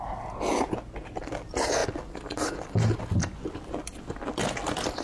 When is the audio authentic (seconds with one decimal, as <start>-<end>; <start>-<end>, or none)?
0.0-5.0